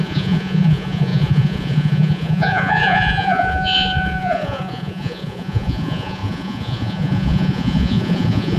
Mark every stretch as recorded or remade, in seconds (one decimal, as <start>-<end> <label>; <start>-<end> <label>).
0.0-8.6 remade